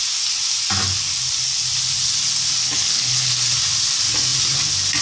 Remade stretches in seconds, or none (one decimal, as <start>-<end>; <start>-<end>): 2.6-3.3